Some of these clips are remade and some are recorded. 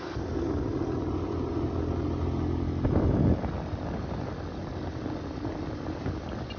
recorded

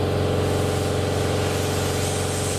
recorded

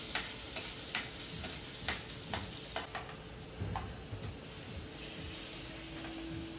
recorded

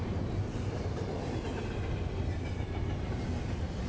recorded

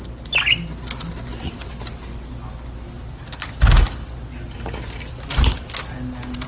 recorded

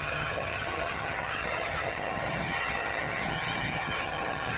remade